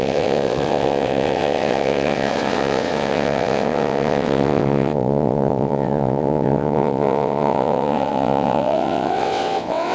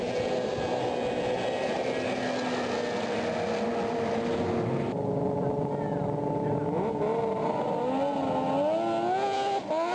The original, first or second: second